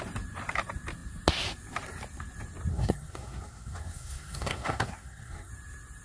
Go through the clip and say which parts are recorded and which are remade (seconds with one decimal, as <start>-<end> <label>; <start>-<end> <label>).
0.0-2.7 recorded; 2.7-5.5 remade; 5.5-6.0 recorded